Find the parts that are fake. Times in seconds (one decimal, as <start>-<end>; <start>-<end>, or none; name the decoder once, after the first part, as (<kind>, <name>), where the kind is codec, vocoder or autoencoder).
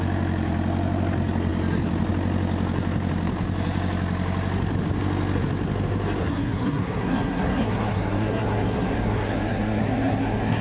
6.2-10.6 (codec, SNAC)